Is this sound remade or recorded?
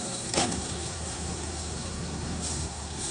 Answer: remade